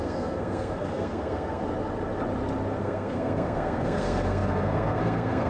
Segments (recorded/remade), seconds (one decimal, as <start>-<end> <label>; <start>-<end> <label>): 0.0-1.6 remade; 1.6-2.8 recorded; 2.8-5.5 remade